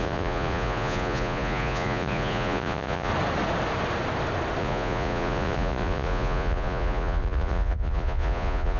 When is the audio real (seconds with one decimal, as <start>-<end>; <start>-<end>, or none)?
3.1-4.6

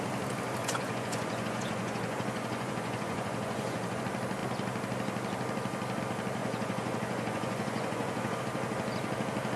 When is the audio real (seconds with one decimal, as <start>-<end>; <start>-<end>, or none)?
0.0-0.6; 4.0-6.4; 8.4-9.6

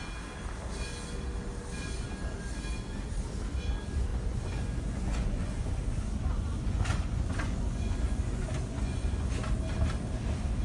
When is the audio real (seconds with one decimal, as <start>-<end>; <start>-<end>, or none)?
0.0-4.1; 9.3-10.6

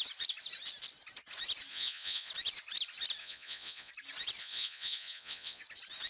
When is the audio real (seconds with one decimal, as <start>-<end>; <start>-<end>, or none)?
0.0-1.7; 2.3-3.2; 3.9-4.4; 5.6-6.1

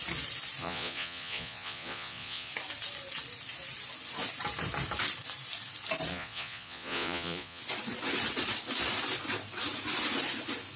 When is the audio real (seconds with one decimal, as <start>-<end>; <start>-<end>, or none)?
0.0-0.6; 2.5-6.1; 7.6-10.8

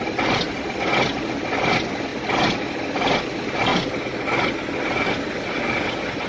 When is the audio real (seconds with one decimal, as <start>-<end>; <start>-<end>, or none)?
0.0-6.3

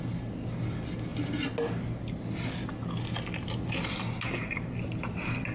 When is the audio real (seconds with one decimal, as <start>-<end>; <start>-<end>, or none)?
0.0-5.5